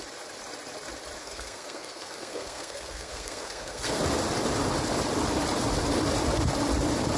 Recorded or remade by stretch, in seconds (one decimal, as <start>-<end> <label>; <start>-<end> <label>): 0.0-1.2 recorded; 1.2-4.0 remade; 4.0-7.2 recorded